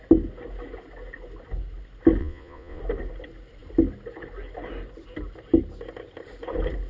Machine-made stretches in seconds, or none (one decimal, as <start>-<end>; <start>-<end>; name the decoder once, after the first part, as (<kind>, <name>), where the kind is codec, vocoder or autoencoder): 2.2-2.8 (vocoder, Vocos)